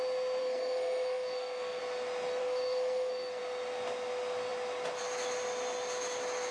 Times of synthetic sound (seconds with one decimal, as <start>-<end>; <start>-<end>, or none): 0.4-1.8; 2.4-3.4